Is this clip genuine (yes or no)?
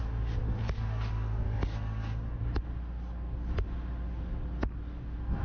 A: yes